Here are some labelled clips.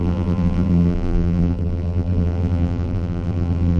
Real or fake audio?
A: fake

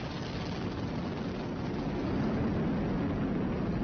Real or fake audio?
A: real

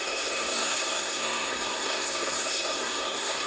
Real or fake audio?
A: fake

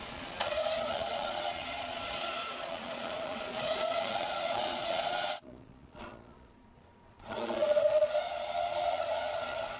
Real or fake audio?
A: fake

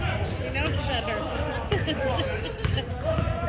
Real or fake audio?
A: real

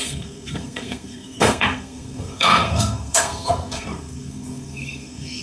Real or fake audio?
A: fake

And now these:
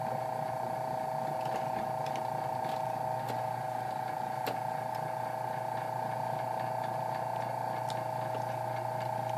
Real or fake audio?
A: real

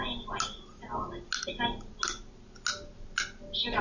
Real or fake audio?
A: real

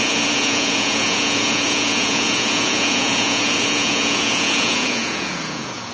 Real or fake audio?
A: fake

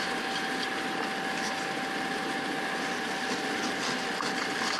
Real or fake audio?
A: real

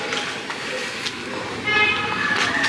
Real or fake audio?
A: real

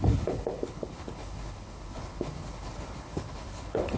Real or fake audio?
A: fake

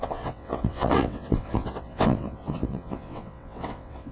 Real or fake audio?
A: fake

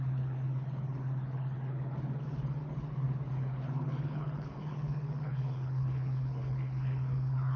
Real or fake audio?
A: fake